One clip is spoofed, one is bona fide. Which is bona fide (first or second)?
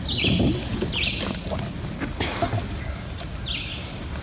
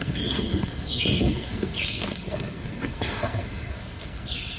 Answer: first